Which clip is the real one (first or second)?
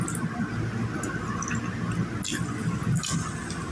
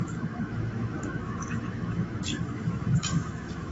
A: first